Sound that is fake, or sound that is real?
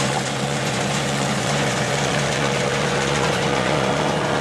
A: fake